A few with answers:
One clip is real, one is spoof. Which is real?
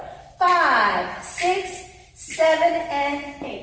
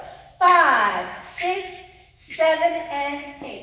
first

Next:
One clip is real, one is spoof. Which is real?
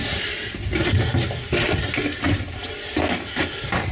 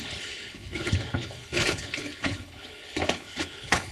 first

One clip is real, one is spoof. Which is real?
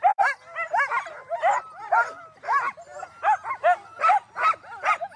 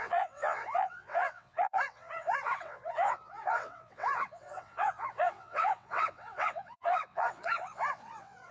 first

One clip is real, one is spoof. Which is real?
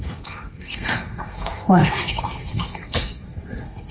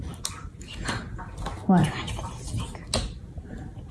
second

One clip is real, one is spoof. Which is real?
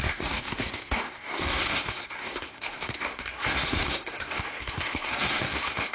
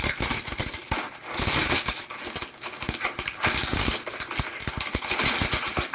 second